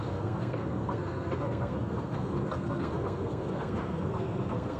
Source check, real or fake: fake